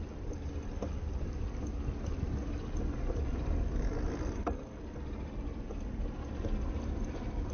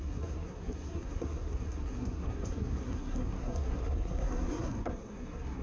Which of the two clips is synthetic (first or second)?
second